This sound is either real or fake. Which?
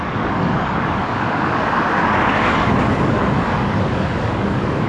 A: fake